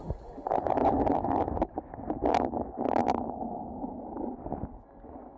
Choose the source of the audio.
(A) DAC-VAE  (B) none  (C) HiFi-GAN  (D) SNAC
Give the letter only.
B